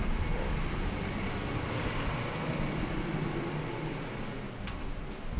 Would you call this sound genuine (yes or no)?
yes